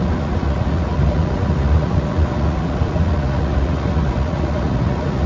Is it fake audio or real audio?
fake